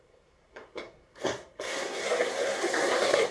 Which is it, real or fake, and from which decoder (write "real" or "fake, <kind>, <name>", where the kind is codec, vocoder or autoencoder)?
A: fake, codec, SNAC